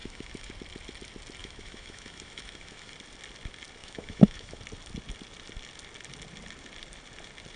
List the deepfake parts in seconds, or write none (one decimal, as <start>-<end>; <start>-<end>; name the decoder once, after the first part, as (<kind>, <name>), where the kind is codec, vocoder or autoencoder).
0.0-0.5 (autoencoder, DAC-VAE); 1.4-2.9; 3.8-4.6